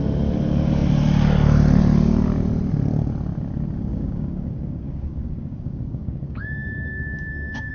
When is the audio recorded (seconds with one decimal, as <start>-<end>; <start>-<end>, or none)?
0.0-3.9